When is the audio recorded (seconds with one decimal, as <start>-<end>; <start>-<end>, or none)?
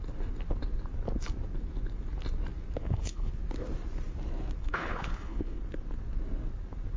0.0-2.8; 3.3-4.6; 5.6-7.0